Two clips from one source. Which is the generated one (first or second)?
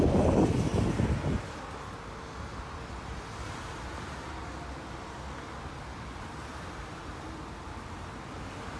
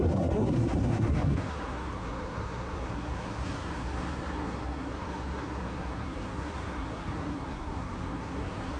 second